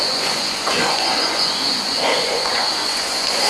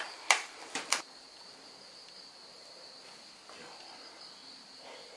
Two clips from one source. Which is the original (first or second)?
second